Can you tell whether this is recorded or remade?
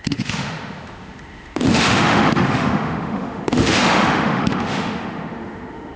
remade